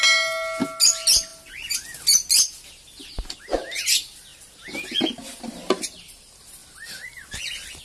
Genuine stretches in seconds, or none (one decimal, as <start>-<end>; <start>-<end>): 0.0-7.8

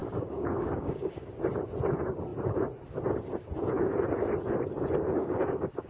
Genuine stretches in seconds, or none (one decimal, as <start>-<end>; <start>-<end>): 1.3-5.2

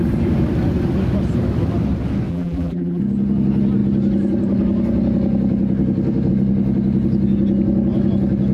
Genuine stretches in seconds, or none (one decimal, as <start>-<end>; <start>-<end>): 0.0-2.3; 3.0-8.5

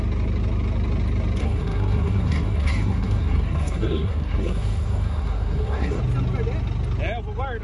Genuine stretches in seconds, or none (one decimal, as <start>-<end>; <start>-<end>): 0.0-1.4; 6.0-7.6

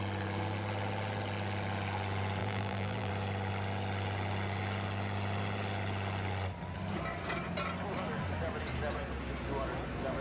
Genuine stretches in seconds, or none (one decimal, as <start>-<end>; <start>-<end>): 0.0-2.4; 3.1-10.2

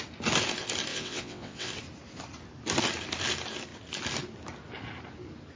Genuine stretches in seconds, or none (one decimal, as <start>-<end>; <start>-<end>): 0.0-0.9; 1.7-5.6